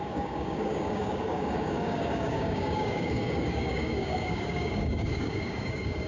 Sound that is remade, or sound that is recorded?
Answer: remade